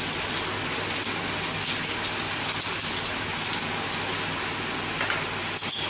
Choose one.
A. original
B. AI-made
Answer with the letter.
A